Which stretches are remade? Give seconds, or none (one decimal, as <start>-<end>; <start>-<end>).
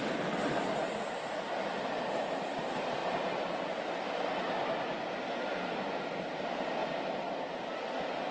none